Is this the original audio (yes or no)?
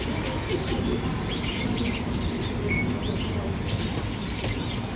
yes